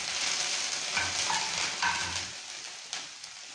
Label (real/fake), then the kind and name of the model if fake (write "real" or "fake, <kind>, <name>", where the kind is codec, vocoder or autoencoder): real